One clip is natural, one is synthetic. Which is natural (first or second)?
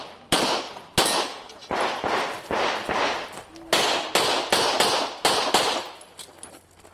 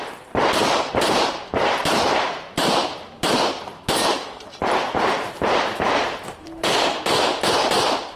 first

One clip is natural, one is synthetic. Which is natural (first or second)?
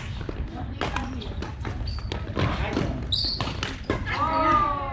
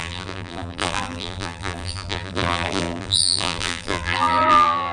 first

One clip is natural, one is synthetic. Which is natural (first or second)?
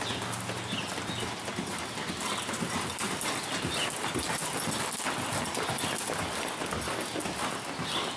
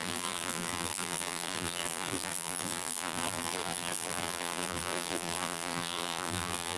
first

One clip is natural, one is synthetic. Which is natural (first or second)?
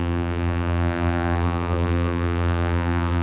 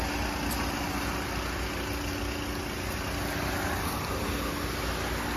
second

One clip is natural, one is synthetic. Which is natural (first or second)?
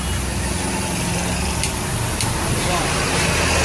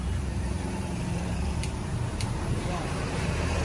first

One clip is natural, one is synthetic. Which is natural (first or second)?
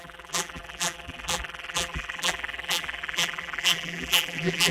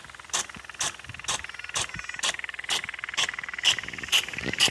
second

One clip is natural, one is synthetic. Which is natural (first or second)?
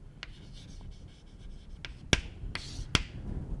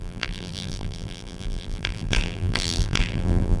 first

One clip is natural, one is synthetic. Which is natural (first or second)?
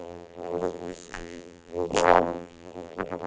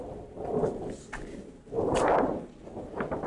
second